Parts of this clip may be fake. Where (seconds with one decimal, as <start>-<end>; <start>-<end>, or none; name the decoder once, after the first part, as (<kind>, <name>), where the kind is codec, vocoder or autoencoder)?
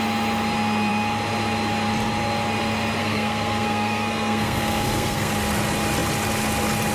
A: 3.0-5.3 (codec, SNAC)